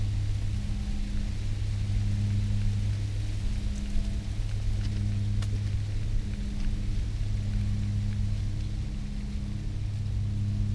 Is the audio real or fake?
real